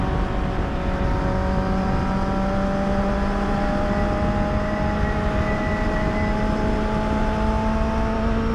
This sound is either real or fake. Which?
real